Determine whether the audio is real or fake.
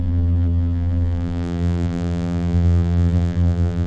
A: fake